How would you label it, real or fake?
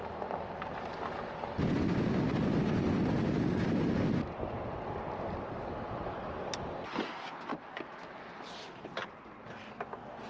real